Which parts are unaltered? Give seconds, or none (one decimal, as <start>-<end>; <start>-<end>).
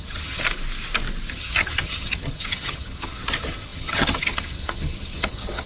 0.4-1.3